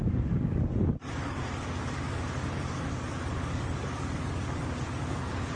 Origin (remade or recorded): remade